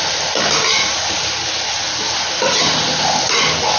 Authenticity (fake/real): real